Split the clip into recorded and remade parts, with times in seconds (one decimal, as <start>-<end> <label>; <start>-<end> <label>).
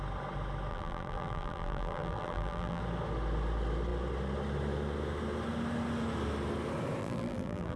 0.0-0.7 recorded; 0.7-2.8 remade; 2.8-7.0 recorded; 7.0-7.8 remade